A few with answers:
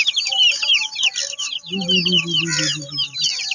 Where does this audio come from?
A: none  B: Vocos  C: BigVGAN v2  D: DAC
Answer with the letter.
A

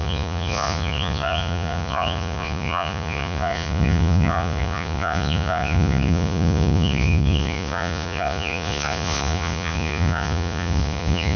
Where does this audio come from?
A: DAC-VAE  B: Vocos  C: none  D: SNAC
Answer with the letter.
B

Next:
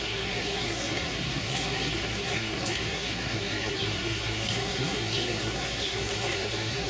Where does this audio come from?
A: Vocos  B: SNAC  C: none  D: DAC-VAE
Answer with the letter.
B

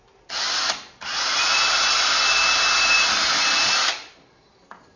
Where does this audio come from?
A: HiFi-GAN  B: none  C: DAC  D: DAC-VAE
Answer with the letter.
B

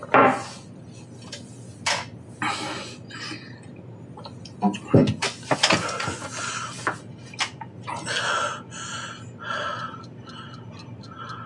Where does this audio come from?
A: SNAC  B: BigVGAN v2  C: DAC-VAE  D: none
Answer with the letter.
D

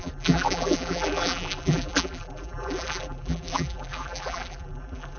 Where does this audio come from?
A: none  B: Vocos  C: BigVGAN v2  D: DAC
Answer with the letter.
C